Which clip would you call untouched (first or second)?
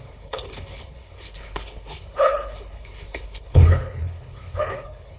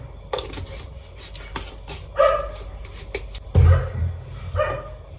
second